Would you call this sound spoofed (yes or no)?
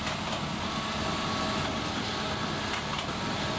no